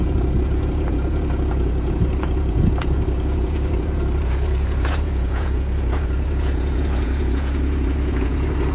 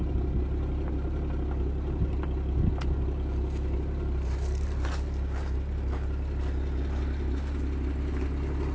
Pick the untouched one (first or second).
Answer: second